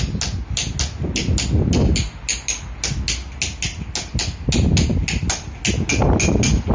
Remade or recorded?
recorded